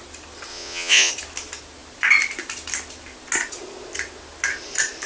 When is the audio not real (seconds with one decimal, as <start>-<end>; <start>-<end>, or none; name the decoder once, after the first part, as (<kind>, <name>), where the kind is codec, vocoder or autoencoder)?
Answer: 0.5-1.1 (vocoder, Vocos)